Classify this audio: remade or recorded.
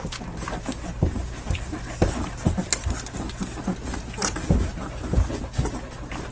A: recorded